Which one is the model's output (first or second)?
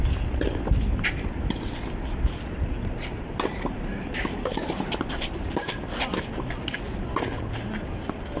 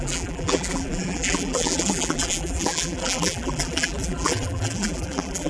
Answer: second